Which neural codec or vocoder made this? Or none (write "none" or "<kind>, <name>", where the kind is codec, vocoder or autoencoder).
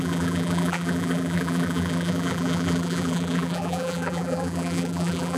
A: vocoder, BigVGAN v2